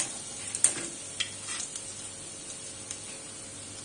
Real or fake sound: real